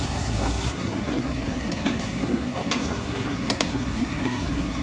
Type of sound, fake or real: fake